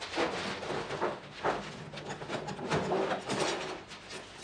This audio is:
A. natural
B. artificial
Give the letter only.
A